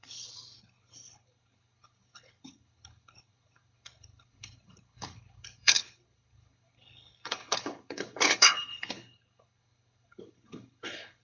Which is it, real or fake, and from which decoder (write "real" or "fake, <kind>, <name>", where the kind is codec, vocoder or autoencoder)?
fake, codec, HILCodec